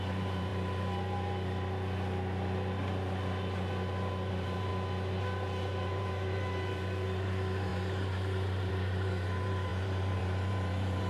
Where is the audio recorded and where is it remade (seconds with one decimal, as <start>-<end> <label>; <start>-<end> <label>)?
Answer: 0.0-0.5 remade; 0.5-4.3 recorded; 4.3-4.7 remade; 4.7-5.2 recorded; 5.2-11.1 remade